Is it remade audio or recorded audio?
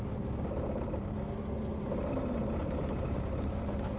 recorded